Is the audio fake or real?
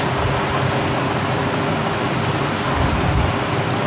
real